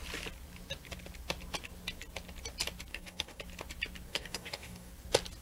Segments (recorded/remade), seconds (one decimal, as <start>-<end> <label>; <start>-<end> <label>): 0.0-2.9 recorded; 2.9-3.4 remade; 3.4-4.1 recorded; 4.1-4.9 remade; 4.9-5.4 recorded